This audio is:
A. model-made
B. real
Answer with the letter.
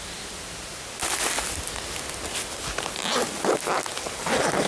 B